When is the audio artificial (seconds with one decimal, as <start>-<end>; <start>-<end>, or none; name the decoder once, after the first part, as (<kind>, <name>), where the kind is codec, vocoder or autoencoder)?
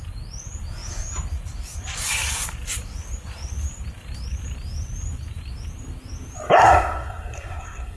6.6-8.0 (codec, SNAC)